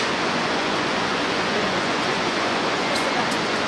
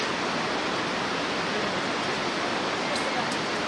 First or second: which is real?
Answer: second